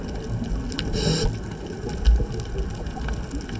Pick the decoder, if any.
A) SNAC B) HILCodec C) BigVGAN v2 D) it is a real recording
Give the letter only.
D